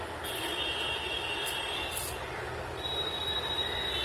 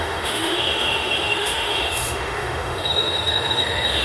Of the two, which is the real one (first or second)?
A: first